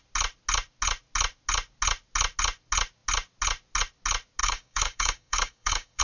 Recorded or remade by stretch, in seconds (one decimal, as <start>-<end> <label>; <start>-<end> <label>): 0.0-4.4 recorded; 4.4-6.0 remade